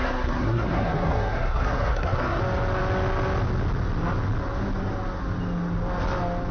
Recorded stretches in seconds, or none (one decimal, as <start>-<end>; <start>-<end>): 2.4-6.5